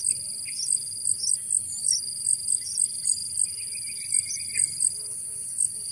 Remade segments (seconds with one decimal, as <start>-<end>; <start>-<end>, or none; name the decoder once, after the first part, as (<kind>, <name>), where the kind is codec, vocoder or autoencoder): 2.1-5.9 (vocoder, BigVGAN v2)